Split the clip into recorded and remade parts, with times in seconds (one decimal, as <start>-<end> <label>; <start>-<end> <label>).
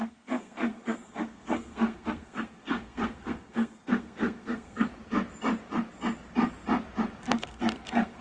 0.0-4.9 remade; 4.9-7.2 recorded; 7.2-8.2 remade